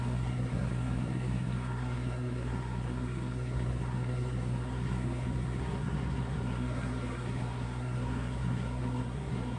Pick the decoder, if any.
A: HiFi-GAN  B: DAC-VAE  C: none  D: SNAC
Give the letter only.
D